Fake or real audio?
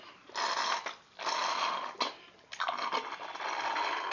real